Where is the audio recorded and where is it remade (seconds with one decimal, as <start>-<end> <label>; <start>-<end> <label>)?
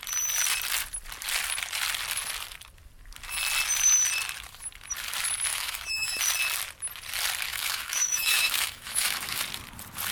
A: 0.0-5.5 recorded; 5.5-6.2 remade; 6.2-7.5 recorded; 7.5-9.4 remade; 9.4-10.1 recorded